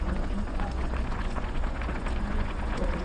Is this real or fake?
fake